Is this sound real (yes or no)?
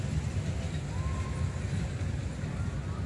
yes